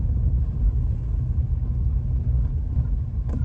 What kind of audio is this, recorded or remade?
recorded